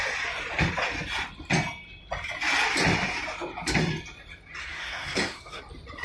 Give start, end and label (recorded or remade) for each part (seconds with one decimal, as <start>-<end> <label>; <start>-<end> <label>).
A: 0.0-4.6 recorded; 4.6-5.6 remade; 5.6-6.0 recorded